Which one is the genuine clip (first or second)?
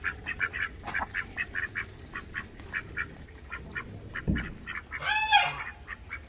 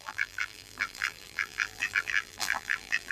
first